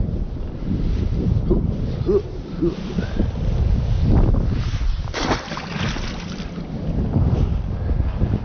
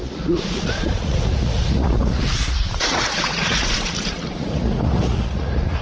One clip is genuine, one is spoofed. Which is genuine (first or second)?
first